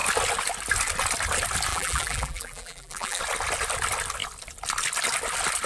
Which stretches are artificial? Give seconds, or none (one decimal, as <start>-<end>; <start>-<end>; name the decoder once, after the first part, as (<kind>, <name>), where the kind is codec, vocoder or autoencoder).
1.7-3.2 (vocoder, BigVGAN v2)